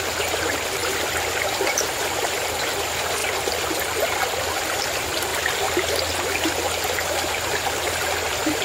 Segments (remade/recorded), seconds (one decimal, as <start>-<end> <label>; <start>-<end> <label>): 0.0-3.2 remade; 3.2-4.4 recorded; 4.4-5.3 remade; 5.3-7.9 recorded; 7.9-8.6 remade